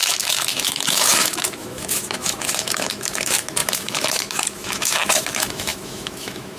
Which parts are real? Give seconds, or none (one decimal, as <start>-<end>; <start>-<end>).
none